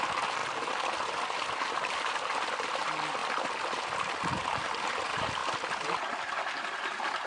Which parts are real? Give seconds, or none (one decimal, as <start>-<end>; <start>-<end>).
0.4-1.7; 3.2-4.4; 5.4-6.1